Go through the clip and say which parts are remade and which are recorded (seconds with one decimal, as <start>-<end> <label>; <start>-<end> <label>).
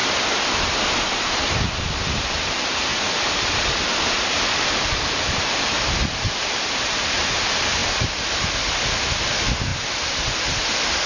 0.0-2.9 recorded; 2.9-7.2 remade; 7.2-11.1 recorded